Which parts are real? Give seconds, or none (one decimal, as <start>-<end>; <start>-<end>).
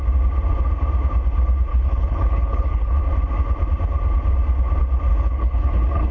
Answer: 0.0-1.7; 3.0-5.1